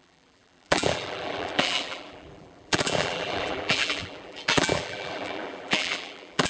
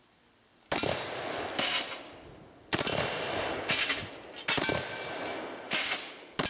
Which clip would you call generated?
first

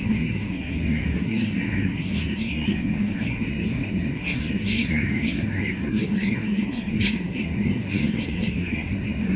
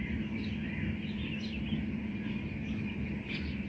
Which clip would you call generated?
first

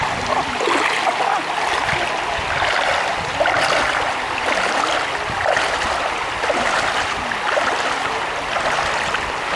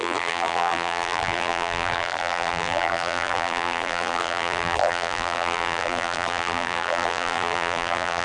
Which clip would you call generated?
second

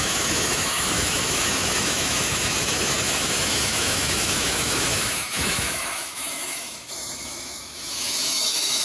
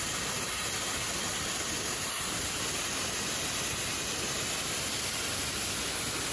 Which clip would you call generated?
first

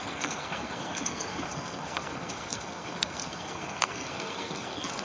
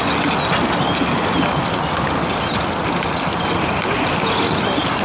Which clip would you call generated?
first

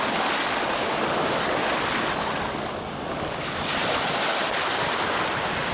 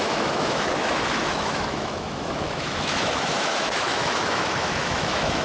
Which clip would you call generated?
second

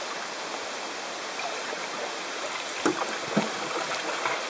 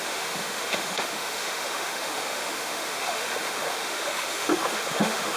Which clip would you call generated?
second